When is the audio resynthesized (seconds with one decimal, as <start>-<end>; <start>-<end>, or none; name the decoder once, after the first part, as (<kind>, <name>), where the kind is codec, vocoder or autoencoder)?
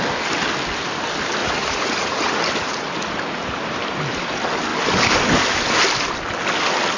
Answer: 1.4-2.4 (vocoder, Vocos)